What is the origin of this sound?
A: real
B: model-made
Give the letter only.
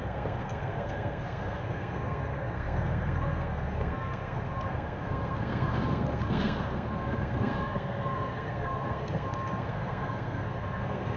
B